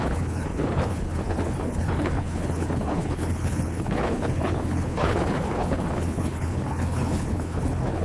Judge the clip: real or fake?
fake